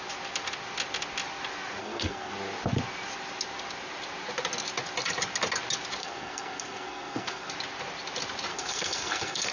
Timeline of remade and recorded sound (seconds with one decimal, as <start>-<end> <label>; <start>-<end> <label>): 0.0-1.8 recorded; 1.8-2.3 remade; 2.3-6.0 recorded; 6.0-7.5 remade; 7.5-8.5 recorded; 8.5-9.5 remade